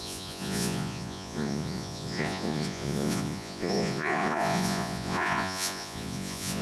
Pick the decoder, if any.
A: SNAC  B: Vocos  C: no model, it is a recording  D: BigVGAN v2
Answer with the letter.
B